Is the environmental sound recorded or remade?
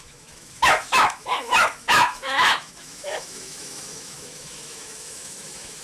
remade